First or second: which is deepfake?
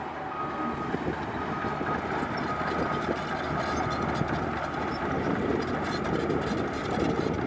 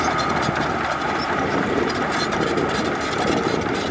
second